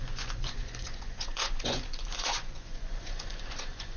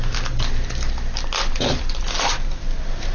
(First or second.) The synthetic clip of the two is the first